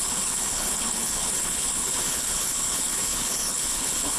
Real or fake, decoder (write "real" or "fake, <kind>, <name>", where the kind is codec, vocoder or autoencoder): fake, codec, HILCodec